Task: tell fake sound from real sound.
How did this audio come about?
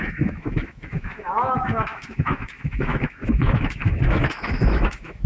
fake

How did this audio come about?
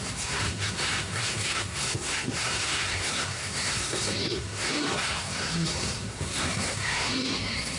fake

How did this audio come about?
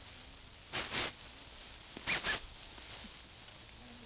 real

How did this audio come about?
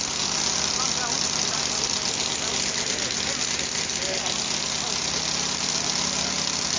real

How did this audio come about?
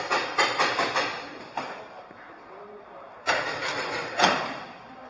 real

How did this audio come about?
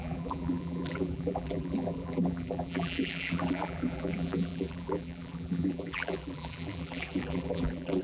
fake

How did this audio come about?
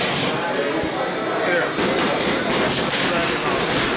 real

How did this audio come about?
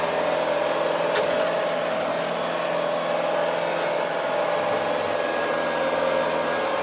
real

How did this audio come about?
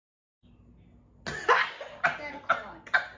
real